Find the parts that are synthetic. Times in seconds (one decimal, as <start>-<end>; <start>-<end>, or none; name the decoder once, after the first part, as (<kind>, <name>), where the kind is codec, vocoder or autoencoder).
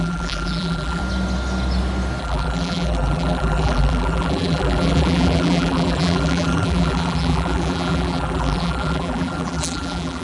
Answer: 0.0-1.0 (vocoder, BigVGAN v2); 2.2-10.2